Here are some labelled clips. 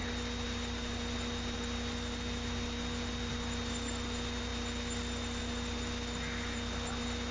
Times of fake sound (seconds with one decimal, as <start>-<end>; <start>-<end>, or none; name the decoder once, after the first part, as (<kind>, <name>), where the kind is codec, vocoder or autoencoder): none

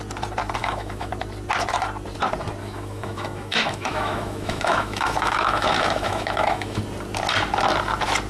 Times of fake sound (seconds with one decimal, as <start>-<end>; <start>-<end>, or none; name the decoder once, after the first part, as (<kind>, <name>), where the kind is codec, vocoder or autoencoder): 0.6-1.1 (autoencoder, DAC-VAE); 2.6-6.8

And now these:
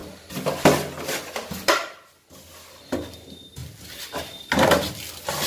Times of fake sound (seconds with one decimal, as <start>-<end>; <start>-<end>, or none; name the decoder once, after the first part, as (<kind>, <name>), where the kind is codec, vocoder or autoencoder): none

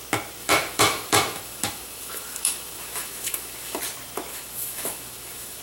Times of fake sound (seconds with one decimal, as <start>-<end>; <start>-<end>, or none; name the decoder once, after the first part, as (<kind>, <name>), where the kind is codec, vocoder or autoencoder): 0.4-3.8 (autoencoder, DAC-VAE); 4.3-5.6

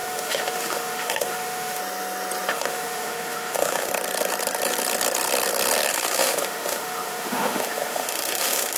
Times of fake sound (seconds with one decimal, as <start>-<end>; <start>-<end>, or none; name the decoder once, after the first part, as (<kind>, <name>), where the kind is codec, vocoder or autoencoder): 0.0-1.8 (autoencoder, DAC-VAE); 2.5-3.9; 5.9-8.8